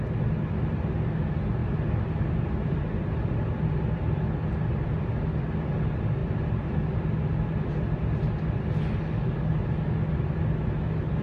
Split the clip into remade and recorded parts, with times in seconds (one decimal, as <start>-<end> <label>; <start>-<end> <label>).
0.0-11.2 recorded